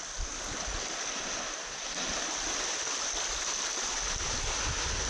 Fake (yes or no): no